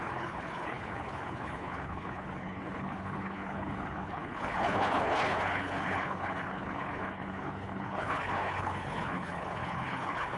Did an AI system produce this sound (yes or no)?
yes